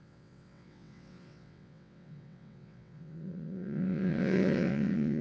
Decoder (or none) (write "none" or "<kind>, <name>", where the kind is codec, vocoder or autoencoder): vocoder, WaveNeXt